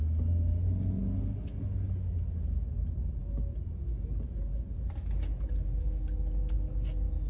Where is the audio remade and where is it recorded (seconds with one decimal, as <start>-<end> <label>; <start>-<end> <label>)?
0.0-7.3 recorded